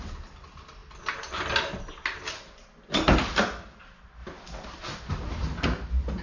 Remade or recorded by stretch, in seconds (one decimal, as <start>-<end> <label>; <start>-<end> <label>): 0.0-6.2 recorded